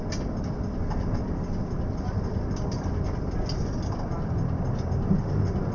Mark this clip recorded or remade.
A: recorded